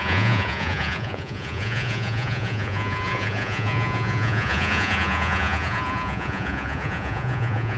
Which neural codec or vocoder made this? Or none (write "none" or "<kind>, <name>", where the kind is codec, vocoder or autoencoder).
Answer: vocoder, Vocos